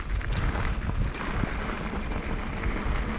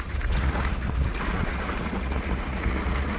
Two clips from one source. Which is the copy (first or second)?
second